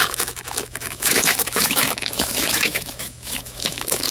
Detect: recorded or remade remade